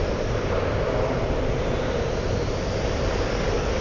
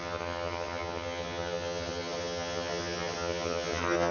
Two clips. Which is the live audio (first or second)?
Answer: first